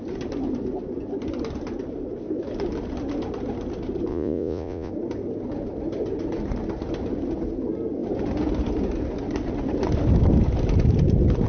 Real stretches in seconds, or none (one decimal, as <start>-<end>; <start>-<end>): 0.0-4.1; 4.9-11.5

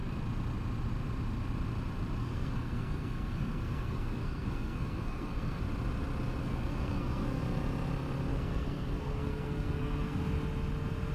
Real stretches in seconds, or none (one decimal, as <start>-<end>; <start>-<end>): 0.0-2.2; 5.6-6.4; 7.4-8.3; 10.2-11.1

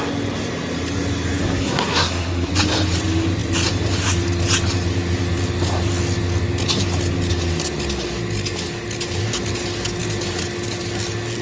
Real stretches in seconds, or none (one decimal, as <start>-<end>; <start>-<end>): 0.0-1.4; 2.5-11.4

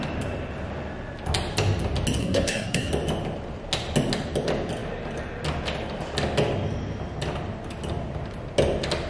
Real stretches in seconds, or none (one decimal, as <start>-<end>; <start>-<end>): 0.0-2.2; 2.9-9.1

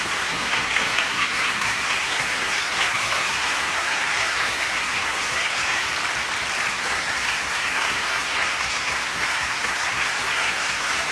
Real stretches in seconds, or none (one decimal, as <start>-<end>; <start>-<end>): 5.9-6.7

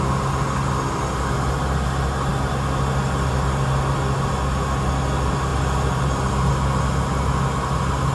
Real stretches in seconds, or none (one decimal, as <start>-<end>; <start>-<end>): 0.0-5.5; 6.5-8.1

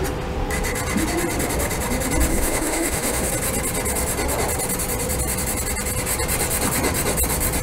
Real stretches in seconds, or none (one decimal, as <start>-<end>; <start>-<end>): 0.0-2.3; 3.3-7.6